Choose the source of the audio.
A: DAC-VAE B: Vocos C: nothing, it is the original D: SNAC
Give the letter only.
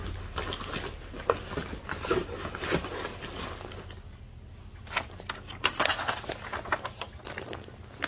C